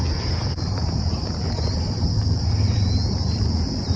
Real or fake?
fake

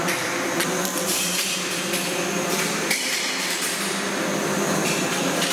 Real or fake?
fake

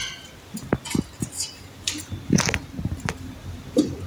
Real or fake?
real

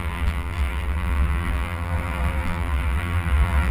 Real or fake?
fake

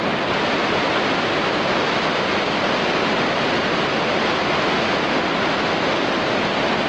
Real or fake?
real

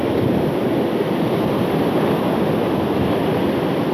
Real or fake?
real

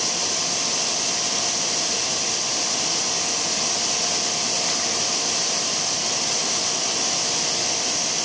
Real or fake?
real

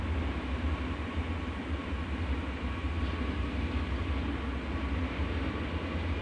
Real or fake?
real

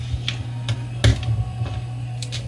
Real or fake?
real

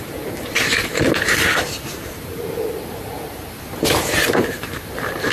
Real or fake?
fake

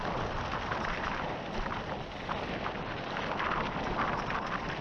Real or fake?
real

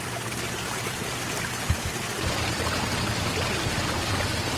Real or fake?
fake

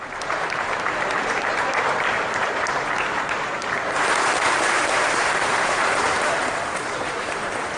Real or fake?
fake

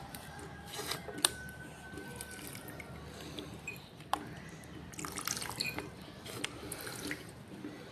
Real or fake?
fake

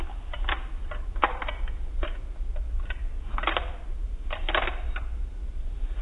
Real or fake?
real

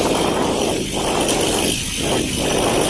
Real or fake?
real